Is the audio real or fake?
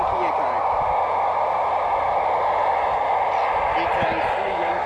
real